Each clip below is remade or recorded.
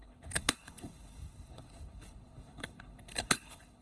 remade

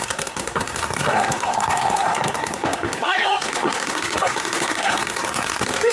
remade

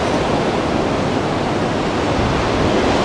recorded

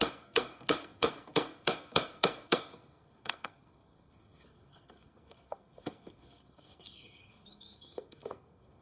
remade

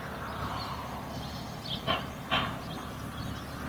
recorded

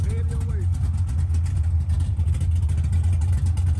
recorded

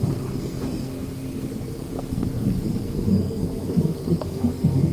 remade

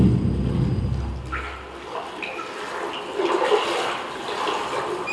recorded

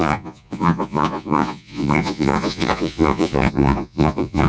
remade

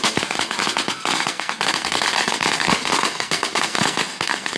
remade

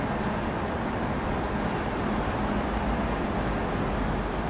recorded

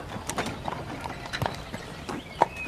recorded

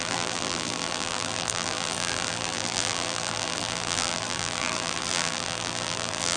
remade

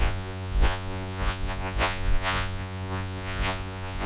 remade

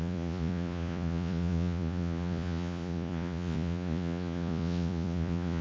remade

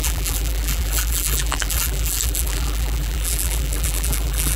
remade